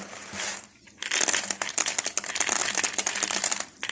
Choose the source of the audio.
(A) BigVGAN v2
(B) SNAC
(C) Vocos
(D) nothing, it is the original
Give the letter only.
D